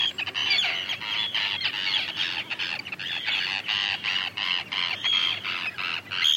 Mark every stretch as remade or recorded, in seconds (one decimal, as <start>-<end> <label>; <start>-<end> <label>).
0.0-6.4 recorded